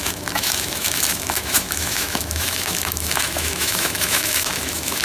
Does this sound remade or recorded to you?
remade